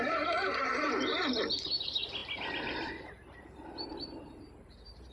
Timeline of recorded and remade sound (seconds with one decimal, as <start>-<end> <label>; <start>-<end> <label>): 0.0-5.1 recorded